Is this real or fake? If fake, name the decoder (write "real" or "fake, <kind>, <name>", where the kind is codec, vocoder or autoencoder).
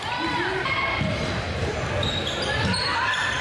fake, vocoder, BigVGAN v2